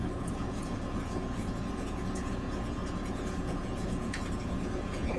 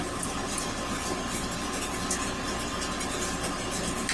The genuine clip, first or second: second